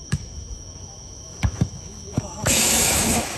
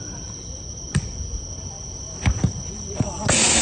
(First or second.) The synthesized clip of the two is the first